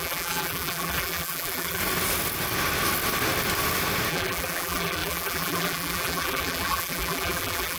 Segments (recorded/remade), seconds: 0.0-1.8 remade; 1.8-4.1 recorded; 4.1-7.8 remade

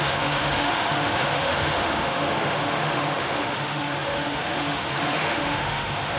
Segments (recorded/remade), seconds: 0.0-6.2 remade

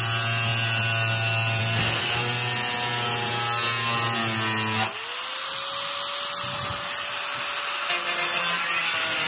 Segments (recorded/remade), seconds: 0.0-9.3 recorded

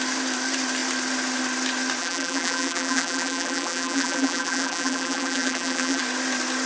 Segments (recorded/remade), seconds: 0.0-2.0 recorded; 2.0-6.0 remade; 6.0-6.7 recorded

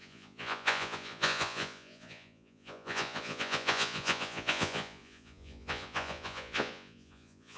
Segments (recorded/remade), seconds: 0.0-7.6 remade

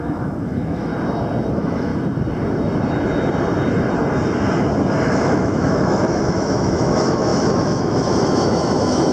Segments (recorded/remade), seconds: 0.0-0.9 remade; 0.9-1.5 recorded; 1.5-1.9 remade; 1.9-4.9 recorded; 4.9-9.1 remade